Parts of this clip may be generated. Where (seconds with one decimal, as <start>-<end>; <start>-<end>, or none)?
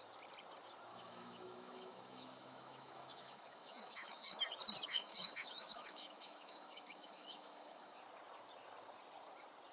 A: 0.9-4.4; 4.9-8.0